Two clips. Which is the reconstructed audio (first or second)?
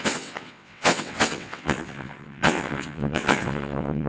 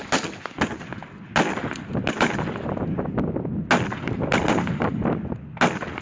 first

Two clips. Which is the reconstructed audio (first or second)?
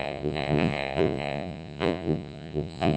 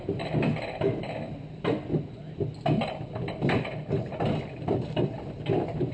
first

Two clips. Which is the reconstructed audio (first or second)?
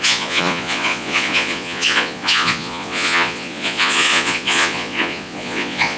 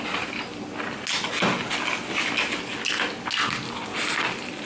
first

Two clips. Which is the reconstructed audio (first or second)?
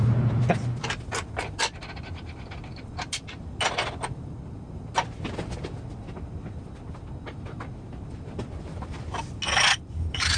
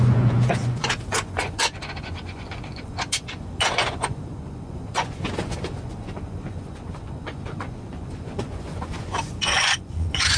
second